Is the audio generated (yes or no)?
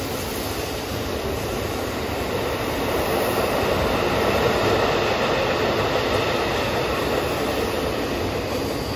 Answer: no